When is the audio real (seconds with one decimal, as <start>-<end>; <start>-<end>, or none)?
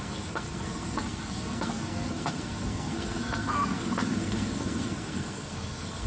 none